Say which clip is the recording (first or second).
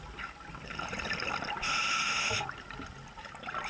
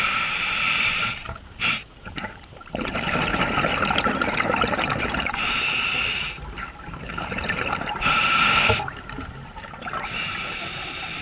first